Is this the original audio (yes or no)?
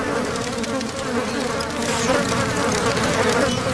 yes